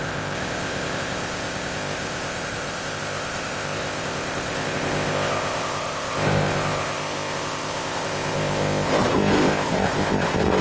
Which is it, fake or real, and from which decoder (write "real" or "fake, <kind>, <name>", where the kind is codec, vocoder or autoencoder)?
fake, codec, ZipCodec